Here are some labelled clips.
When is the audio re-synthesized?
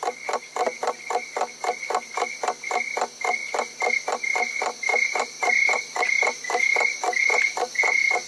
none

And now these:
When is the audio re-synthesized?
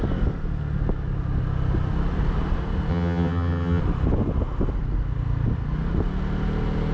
2.9-3.8 (vocoder, HiFi-GAN)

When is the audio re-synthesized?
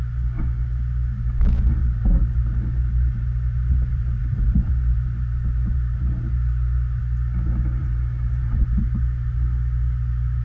1.8-7.0 (vocoder, BigVGAN v2); 7.8-8.8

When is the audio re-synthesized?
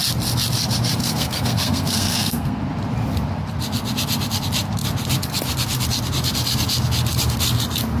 1.0-2.6 (codec, SNAC)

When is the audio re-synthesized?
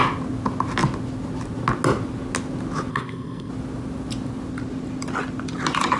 2.9-3.5 (codec, SNAC)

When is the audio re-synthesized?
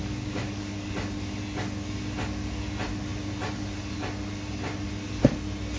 0.0-0.9 (codec, DAC)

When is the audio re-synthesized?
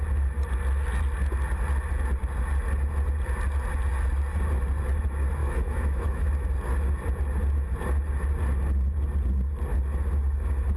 5.4-6.3 (autoencoder, DAC-VAE)